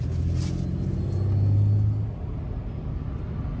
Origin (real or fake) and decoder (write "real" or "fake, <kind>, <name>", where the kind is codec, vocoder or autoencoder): real